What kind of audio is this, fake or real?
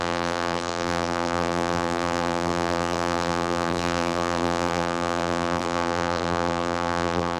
fake